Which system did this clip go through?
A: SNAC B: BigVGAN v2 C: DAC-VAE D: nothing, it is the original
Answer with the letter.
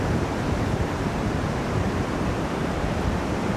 B